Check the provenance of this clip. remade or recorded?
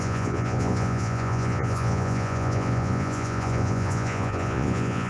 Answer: remade